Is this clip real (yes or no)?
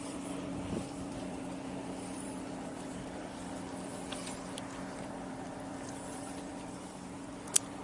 no